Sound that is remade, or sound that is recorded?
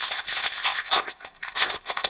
remade